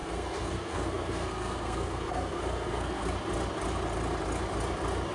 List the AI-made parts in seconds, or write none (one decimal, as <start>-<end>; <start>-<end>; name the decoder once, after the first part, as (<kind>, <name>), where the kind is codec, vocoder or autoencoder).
0.0-3.1 (codec, SNAC)